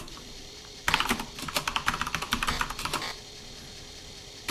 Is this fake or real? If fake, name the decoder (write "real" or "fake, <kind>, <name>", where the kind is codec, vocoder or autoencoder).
fake, vocoder, BigVGAN v2